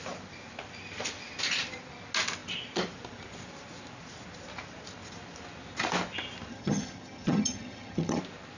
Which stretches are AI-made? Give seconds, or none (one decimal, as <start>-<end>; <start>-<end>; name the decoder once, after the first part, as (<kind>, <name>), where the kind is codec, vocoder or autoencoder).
6.5-8.2 (vocoder, HiFi-GAN)